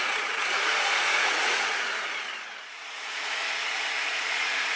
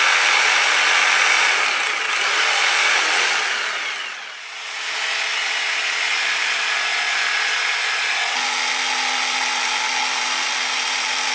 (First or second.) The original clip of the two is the second